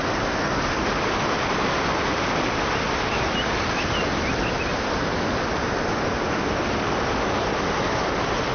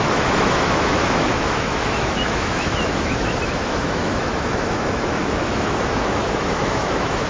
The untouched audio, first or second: first